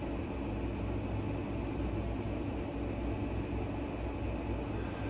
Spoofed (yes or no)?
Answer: no